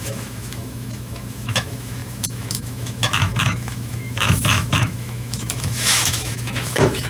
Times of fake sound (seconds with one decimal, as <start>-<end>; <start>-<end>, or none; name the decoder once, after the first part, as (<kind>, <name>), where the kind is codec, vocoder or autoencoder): 0.0-7.1 (autoencoder, DAC-VAE)